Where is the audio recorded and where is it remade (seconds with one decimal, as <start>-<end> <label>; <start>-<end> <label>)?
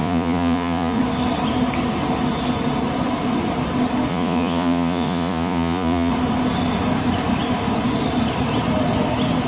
0.0-1.0 remade; 1.0-4.1 recorded; 4.1-6.1 remade; 6.1-9.5 recorded